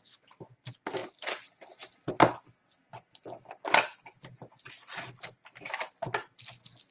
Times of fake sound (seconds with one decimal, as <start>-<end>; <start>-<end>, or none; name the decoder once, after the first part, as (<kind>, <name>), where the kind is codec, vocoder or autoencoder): none